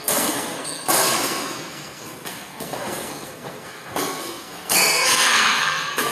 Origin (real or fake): fake